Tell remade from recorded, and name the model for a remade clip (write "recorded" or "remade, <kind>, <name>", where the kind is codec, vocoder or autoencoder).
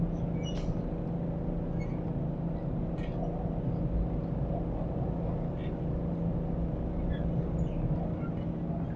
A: recorded